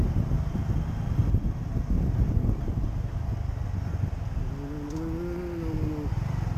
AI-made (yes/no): no